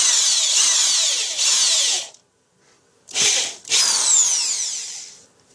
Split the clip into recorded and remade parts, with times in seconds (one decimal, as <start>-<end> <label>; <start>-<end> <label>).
0.0-1.5 recorded; 1.5-2.0 remade; 2.0-4.2 recorded; 4.2-5.0 remade; 5.0-5.5 recorded